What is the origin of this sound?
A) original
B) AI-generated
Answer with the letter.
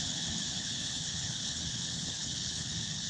B